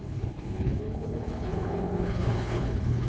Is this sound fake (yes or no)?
yes